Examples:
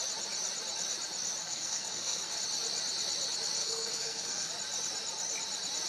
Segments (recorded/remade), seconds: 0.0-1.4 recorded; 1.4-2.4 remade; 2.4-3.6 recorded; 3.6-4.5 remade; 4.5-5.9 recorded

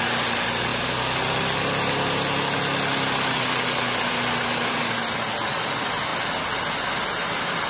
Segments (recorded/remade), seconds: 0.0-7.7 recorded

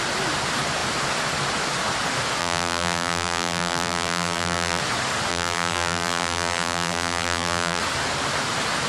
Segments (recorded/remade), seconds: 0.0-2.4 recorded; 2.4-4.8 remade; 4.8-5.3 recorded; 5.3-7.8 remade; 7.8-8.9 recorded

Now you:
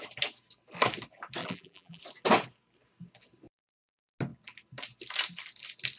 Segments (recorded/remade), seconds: 0.0-1.4 recorded; 1.4-2.0 remade; 2.0-6.0 recorded

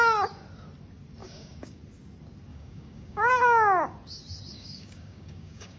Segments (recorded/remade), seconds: 0.0-1.2 recorded; 1.2-1.8 remade; 1.8-2.5 recorded; 2.5-3.3 remade; 3.3-4.5 recorded; 4.5-5.8 remade